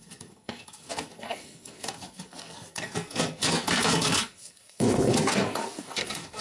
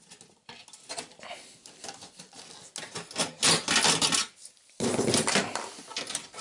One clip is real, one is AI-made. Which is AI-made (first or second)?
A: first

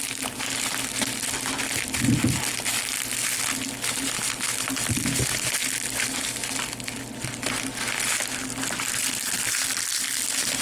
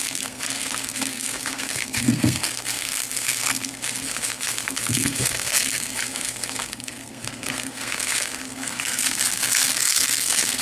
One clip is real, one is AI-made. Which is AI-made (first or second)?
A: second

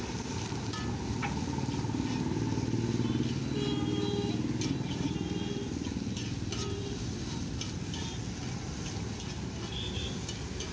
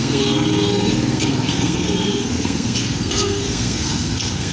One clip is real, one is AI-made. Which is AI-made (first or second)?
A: second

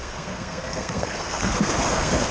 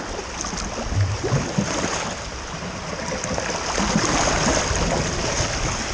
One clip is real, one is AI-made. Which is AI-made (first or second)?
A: first